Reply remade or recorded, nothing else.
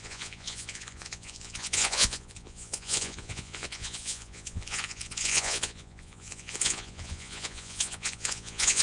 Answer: remade